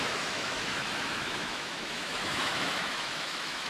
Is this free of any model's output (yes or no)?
no